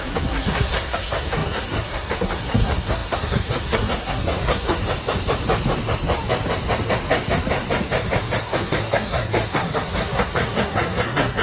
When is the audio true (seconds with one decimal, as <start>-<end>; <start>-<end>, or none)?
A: 4.8-8.4